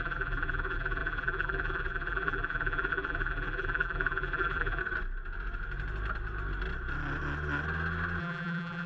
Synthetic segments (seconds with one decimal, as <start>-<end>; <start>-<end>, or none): 0.0-4.8; 8.2-8.9